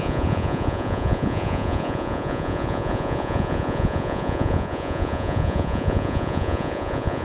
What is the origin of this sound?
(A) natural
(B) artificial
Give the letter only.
B